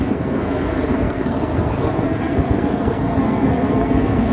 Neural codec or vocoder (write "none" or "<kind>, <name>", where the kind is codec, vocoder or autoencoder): codec, SNAC